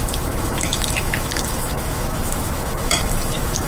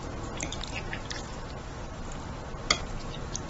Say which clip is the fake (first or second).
first